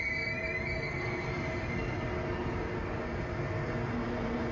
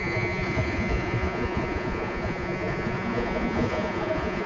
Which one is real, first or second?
first